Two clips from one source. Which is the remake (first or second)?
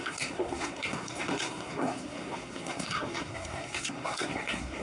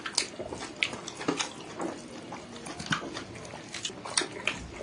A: first